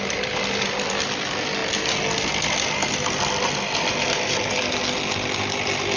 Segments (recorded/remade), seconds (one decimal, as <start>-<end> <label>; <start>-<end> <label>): 0.0-6.0 recorded